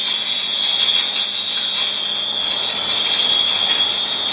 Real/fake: real